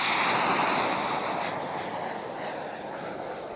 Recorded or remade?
recorded